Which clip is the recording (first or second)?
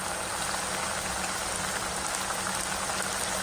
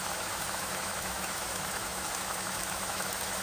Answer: first